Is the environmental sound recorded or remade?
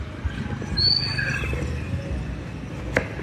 recorded